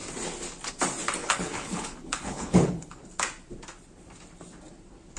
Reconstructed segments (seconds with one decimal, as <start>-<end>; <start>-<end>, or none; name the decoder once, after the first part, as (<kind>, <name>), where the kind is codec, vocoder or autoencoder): 1.2-3.0 (codec, HILCodec)